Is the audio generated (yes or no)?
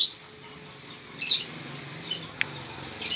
no